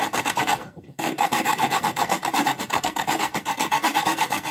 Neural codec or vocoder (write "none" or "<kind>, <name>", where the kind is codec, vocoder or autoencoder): codec, SNAC